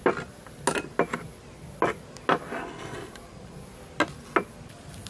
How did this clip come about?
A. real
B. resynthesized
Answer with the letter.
A